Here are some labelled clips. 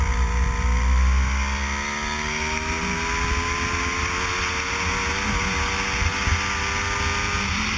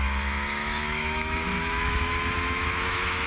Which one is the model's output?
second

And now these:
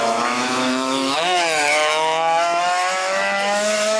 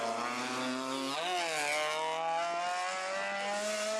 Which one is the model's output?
first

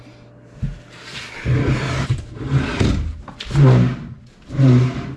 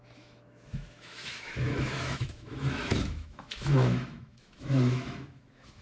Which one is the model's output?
second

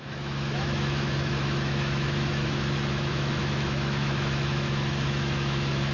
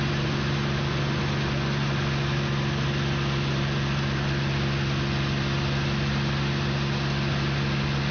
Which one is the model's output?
first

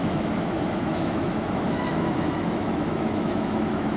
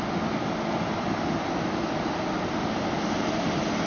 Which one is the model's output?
first